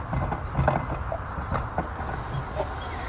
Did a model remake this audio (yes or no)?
no